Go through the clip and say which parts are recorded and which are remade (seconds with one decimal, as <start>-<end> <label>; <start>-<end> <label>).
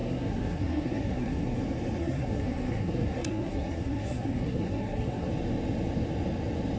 0.0-1.6 remade; 1.6-2.0 recorded; 2.0-5.3 remade; 5.3-6.8 recorded